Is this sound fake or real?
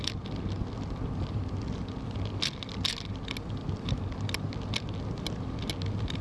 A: real